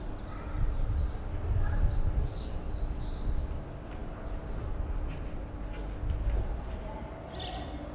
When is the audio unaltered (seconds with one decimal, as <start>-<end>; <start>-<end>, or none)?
0.0-7.9